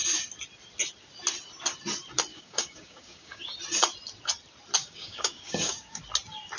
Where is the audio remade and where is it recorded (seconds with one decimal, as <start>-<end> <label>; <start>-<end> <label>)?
0.0-2.3 recorded; 2.3-3.4 remade; 3.4-4.8 recorded; 4.8-6.0 remade; 6.0-6.6 recorded